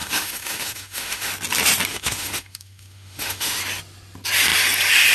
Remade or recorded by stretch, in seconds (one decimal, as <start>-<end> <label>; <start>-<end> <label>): 0.0-1.3 remade; 1.3-1.9 recorded; 1.9-3.6 remade; 3.6-5.1 recorded